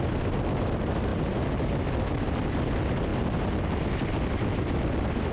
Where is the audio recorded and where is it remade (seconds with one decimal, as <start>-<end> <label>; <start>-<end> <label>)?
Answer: 0.0-5.3 recorded